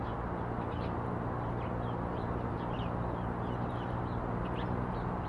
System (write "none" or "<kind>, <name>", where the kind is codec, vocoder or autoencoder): none